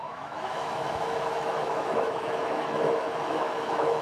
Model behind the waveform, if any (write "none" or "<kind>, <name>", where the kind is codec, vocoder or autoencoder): autoencoder, DAC-VAE